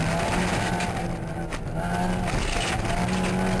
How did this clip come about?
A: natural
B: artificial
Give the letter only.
A